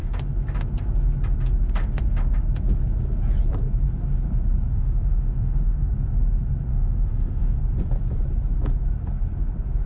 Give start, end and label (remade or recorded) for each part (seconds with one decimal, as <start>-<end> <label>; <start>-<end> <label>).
0.0-4.7 recorded; 4.7-5.9 remade; 5.9-6.7 recorded; 6.7-7.6 remade; 7.6-9.9 recorded